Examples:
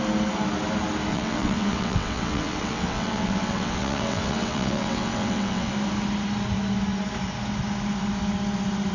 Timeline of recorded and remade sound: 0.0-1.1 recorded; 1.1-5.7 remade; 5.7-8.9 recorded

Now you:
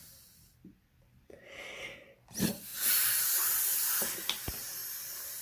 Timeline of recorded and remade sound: 0.0-5.4 recorded

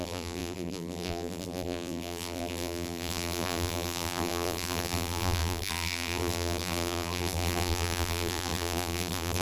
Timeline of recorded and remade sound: 0.0-9.4 remade

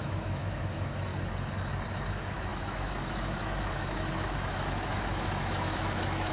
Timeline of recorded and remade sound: 0.0-1.1 remade; 1.1-2.1 recorded; 2.1-6.3 remade

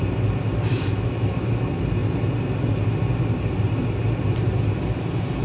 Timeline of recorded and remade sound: 0.0-0.7 recorded; 0.7-1.4 remade; 1.4-5.4 recorded

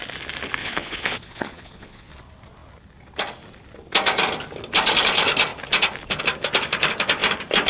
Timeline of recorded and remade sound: 0.0-0.6 recorded; 0.6-2.1 remade; 2.1-7.7 recorded

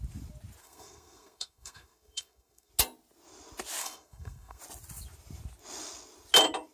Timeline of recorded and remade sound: 0.0-0.6 recorded; 0.6-2.7 remade; 2.7-3.8 recorded; 3.8-4.6 remade; 4.6-6.7 recorded